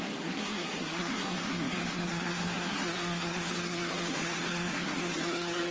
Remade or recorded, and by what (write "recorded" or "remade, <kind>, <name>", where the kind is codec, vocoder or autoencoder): remade, codec, SNAC